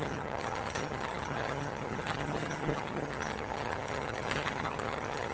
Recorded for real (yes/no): no